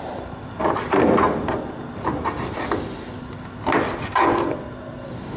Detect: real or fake real